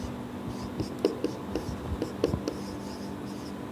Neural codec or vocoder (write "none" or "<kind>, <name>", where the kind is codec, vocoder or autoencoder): none